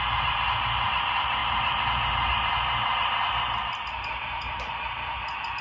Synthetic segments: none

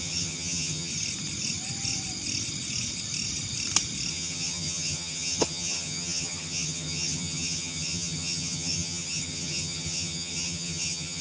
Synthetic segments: 0.0-0.9 (vocoder, HiFi-GAN); 4.1-11.2

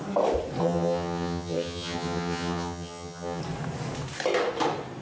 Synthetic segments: 0.6-3.4 (vocoder, HiFi-GAN)